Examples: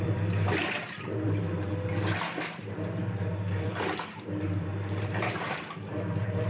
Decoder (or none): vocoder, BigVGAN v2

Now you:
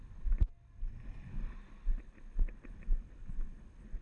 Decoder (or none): none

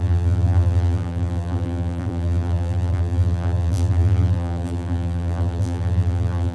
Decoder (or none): vocoder, BigVGAN v2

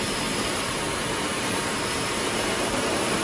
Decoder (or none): vocoder, BigVGAN v2